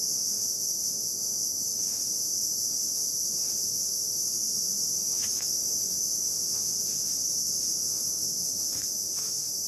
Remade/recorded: remade